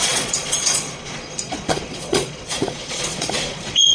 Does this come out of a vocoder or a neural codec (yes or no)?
yes